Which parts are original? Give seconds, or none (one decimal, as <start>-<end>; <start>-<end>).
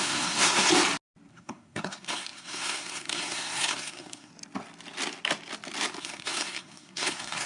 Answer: 0.7-1.3; 4.3-6.0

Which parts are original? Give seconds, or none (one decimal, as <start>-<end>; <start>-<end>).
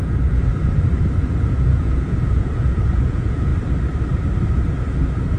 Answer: 0.5-1.2; 3.5-5.4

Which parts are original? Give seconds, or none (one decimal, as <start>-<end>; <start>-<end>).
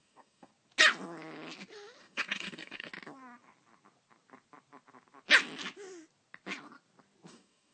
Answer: 0.5-2.0; 2.9-7.3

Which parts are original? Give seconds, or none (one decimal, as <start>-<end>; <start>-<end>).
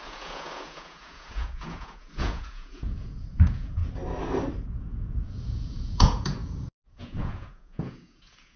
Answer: 3.8-4.7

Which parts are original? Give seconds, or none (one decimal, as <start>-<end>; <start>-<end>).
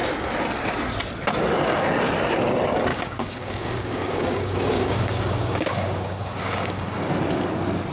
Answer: 0.0-2.9; 7.1-7.9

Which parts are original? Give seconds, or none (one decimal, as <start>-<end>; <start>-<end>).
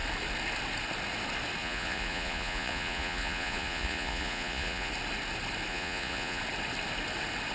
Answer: 0.0-1.6; 4.9-5.7; 6.4-7.5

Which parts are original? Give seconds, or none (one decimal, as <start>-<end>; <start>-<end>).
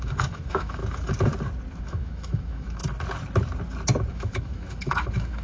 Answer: 0.8-1.8; 2.8-4.1